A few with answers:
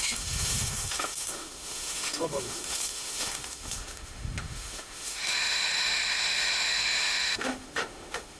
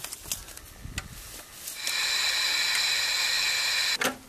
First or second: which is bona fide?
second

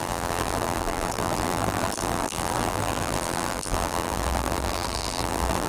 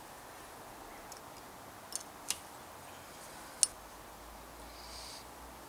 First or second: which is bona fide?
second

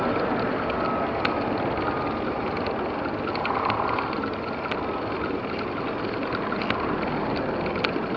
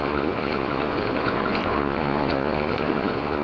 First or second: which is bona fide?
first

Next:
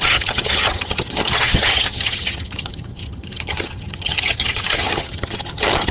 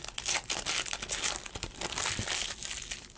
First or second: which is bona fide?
second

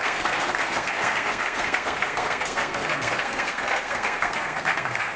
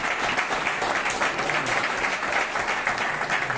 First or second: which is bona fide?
second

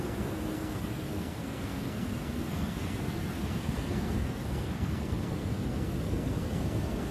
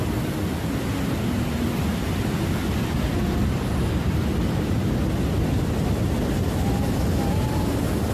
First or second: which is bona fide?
second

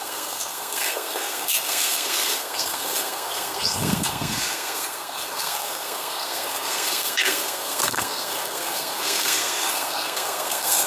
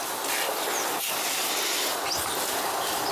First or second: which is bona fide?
second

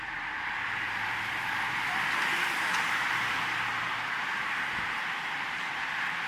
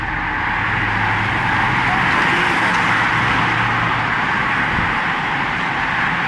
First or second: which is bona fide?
second